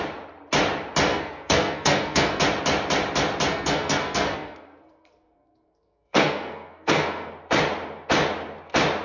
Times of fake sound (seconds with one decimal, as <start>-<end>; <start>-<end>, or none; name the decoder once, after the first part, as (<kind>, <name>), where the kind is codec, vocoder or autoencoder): 1.1-2.4 (codec, SNAC); 3.5-7.3